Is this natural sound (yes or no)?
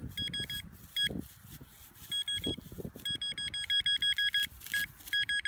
yes